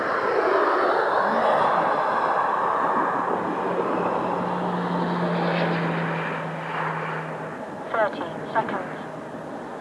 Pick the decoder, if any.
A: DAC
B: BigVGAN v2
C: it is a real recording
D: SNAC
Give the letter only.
C